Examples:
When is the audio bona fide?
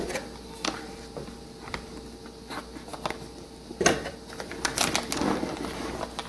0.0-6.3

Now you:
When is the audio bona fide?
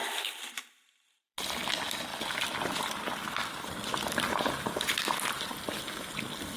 0.0-2.1; 6.1-6.6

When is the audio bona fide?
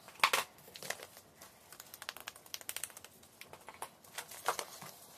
0.0-5.2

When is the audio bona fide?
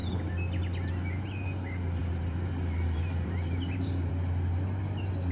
0.0-2.0; 4.1-5.3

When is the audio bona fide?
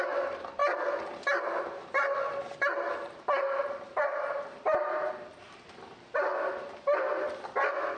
0.0-8.0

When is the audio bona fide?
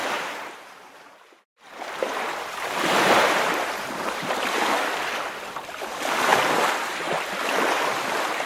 4.6-8.5